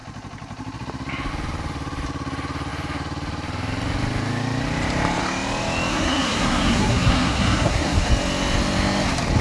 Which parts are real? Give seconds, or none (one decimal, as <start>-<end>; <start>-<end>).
0.0-5.9; 8.1-9.4